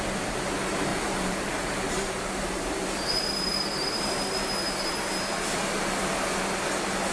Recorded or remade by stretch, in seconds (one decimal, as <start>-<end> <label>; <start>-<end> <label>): 0.0-0.9 recorded; 0.9-4.1 remade; 4.1-7.1 recorded